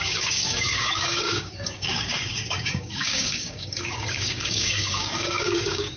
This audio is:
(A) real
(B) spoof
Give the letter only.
B